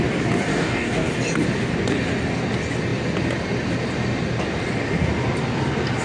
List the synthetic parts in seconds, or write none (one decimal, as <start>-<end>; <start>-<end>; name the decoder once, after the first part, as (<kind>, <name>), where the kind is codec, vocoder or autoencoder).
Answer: 0.5-1.1 (codec, DAC)